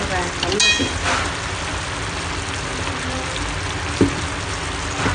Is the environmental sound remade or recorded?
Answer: recorded